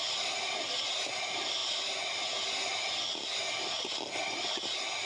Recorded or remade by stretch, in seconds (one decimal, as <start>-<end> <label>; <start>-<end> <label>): 0.0-5.1 recorded